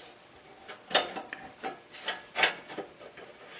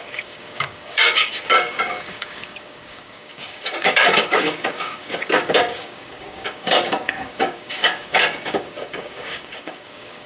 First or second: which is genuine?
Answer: first